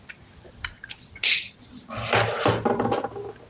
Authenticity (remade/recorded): recorded